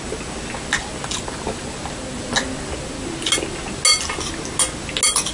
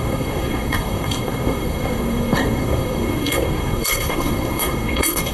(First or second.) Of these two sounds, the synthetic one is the second